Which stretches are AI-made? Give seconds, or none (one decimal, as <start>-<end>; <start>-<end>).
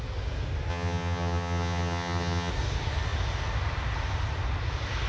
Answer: 0.7-2.5